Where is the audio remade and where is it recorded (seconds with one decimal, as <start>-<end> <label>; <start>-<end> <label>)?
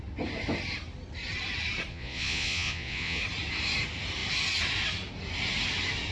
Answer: 0.0-1.9 recorded; 1.9-3.2 remade; 3.2-6.1 recorded